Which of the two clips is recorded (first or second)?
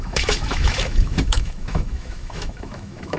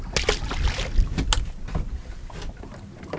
second